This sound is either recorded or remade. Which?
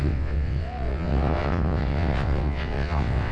remade